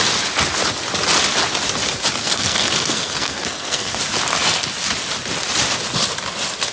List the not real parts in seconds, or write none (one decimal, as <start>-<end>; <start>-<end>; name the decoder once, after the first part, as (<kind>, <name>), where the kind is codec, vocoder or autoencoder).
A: 2.2-4.0 (codec, SNAC)